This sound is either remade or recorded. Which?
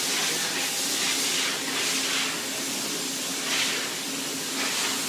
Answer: recorded